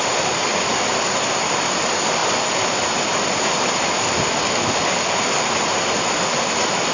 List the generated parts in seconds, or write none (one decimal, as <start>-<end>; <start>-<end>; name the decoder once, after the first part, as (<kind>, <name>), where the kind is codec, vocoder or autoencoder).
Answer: none